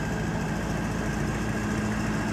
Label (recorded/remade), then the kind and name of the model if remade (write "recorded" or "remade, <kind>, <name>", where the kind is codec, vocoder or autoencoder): recorded